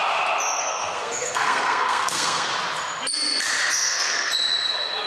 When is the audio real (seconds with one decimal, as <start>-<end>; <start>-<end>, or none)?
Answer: 0.0-0.6; 2.5-3.7; 4.3-5.1